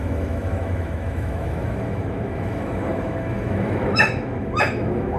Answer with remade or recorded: remade